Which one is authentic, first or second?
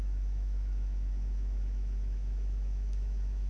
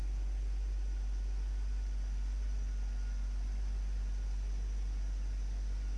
second